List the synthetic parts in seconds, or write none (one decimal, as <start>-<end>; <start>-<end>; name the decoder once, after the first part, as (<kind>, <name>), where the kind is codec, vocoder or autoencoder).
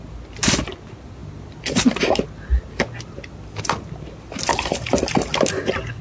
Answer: none